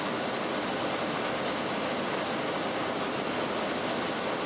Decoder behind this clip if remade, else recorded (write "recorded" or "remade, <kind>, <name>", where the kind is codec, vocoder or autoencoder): recorded